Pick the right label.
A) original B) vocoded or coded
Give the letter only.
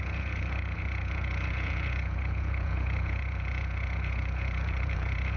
B